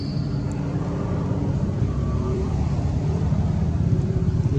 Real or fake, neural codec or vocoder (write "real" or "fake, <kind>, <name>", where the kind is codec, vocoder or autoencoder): fake, vocoder, BigVGAN v2